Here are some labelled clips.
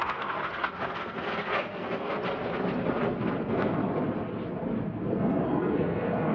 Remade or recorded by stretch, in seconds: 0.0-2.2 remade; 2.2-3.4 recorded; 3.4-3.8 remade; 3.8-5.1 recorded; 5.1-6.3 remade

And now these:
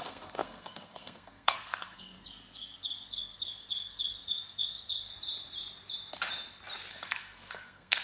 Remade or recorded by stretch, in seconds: 0.0-5.1 remade; 5.1-6.9 recorded; 6.9-8.0 remade

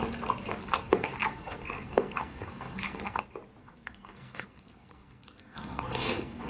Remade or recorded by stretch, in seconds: 0.0-0.6 recorded; 0.6-3.2 remade; 3.2-3.6 recorded; 3.6-6.5 remade